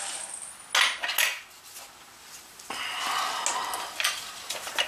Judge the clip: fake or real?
real